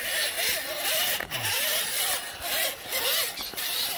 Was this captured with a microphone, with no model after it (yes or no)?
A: yes